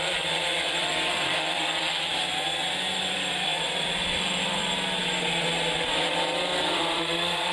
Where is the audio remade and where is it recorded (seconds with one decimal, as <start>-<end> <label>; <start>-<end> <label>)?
0.0-2.1 remade; 2.1-3.0 recorded; 3.0-5.0 remade; 5.0-6.6 recorded; 6.6-7.5 remade